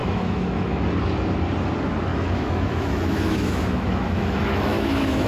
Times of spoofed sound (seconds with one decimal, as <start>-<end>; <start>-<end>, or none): 0.0-0.8; 2.1-5.3